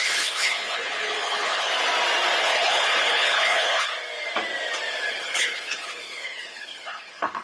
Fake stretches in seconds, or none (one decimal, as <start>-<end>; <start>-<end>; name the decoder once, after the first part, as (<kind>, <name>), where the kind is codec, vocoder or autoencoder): 0.0-1.7 (codec, HILCodec); 2.4-3.9; 5.1-7.4